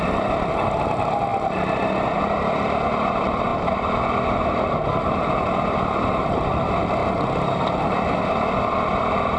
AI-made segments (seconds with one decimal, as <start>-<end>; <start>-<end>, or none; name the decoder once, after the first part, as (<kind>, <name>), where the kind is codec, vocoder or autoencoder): none